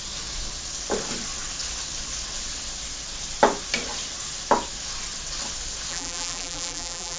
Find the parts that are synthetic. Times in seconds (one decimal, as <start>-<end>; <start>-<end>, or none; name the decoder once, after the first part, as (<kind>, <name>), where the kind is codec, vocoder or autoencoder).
5.9-7.2 (vocoder, BigVGAN v2)